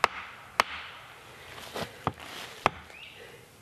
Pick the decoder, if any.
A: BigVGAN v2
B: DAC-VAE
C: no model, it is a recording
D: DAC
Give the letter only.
C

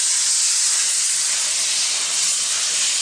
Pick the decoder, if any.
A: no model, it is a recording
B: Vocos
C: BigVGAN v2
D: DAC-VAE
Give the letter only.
A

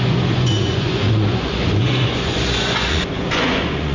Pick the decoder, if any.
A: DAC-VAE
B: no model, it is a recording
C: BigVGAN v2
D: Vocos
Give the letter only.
D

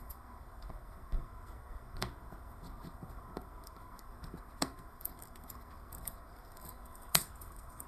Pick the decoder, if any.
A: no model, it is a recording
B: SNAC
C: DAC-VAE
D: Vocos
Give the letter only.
B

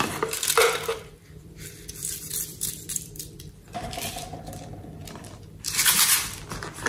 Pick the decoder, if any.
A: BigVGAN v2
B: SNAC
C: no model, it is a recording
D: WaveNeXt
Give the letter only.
A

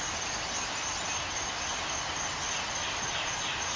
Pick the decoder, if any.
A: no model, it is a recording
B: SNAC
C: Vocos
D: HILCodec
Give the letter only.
A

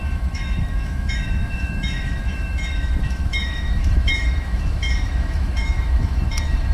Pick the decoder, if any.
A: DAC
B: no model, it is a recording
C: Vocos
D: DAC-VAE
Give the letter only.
D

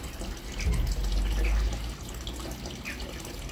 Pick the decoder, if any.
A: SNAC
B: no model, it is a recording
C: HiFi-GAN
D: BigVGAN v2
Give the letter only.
B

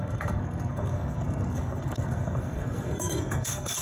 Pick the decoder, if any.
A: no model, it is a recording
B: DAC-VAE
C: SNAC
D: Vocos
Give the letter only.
C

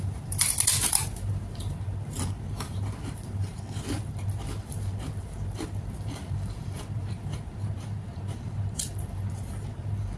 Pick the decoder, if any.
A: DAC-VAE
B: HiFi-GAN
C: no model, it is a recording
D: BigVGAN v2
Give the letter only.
D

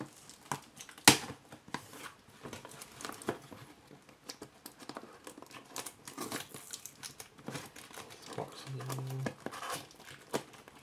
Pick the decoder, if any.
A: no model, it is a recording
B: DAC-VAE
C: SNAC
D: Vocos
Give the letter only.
A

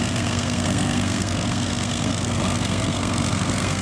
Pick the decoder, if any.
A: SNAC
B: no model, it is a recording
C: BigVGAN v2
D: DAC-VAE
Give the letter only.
A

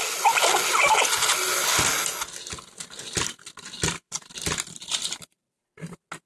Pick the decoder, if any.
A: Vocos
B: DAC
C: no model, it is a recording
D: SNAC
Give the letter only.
C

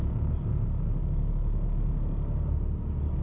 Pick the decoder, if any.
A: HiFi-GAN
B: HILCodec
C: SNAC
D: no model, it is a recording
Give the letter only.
D